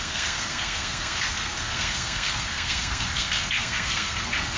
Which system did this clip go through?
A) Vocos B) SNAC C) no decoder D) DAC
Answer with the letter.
B